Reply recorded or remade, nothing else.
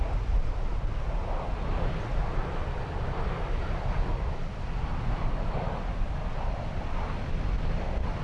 recorded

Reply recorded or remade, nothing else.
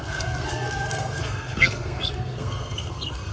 remade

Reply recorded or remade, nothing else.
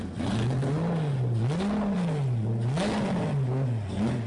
recorded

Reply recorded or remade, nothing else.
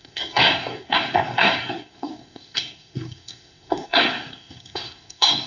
remade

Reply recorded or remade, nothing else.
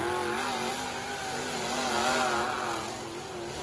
recorded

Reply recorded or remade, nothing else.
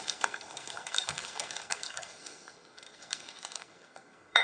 remade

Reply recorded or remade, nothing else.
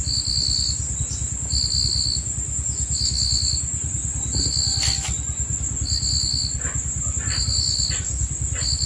recorded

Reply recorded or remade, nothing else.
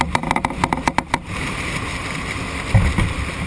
recorded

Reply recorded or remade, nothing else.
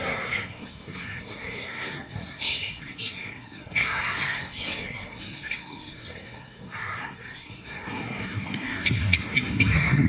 remade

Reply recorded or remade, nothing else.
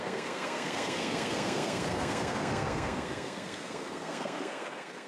remade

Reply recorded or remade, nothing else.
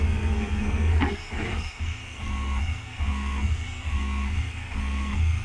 remade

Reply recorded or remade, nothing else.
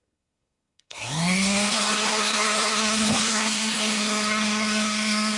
remade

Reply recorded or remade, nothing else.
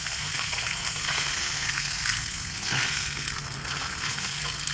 remade